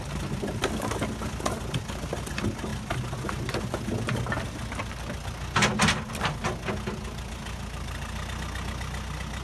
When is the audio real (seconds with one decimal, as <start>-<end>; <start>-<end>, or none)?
0.0-9.4